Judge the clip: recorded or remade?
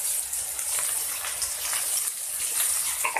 recorded